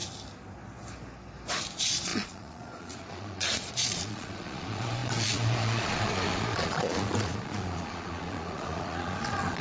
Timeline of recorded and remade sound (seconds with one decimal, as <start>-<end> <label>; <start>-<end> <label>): 0.0-1.7 recorded; 1.7-9.6 remade

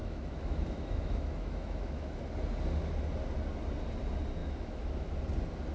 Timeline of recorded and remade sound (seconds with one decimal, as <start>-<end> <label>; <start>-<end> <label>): 0.0-2.2 remade; 2.2-4.4 recorded; 4.4-5.1 remade; 5.1-5.7 recorded

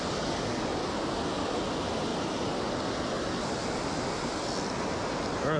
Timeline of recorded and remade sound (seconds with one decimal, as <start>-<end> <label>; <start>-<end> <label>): 0.0-2.1 recorded; 2.1-2.6 remade; 2.6-5.6 recorded

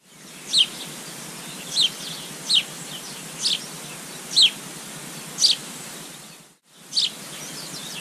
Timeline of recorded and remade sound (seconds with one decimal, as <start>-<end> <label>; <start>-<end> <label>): 0.0-5.6 recorded; 5.6-6.1 remade; 6.1-8.0 recorded

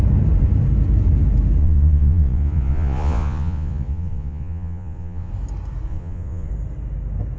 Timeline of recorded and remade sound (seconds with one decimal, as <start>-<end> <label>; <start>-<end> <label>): 0.0-1.6 recorded; 1.6-5.3 remade; 5.3-5.9 recorded; 5.9-6.5 remade; 6.5-7.4 recorded

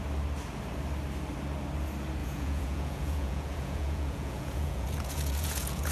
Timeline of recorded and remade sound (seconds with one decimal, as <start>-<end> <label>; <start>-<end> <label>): 0.0-2.2 recorded; 2.2-5.9 remade

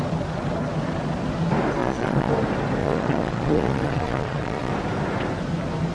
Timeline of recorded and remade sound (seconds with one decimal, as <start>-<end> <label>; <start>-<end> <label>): 0.0-1.8 recorded; 1.8-2.3 remade; 2.3-2.8 recorded; 2.8-4.7 remade; 4.7-5.9 recorded

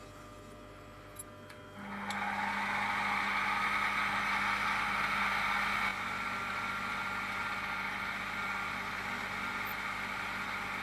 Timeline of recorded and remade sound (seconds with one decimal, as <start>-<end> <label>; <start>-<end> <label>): 0.0-10.8 recorded